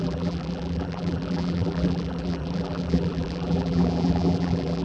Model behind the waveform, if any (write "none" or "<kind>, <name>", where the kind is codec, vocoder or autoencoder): vocoder, BigVGAN v2